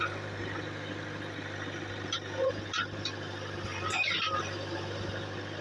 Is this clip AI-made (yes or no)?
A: no